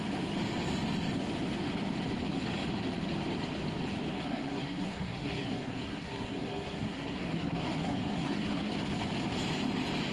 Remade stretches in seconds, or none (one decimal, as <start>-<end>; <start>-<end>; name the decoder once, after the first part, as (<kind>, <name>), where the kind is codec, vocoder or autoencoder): 4.1-8.7 (codec, SNAC)